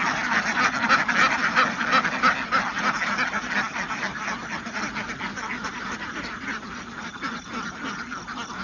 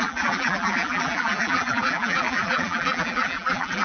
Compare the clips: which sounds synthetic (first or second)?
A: second